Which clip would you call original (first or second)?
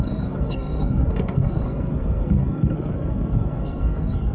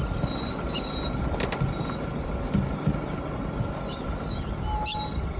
second